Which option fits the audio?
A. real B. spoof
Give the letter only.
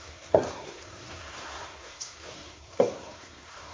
B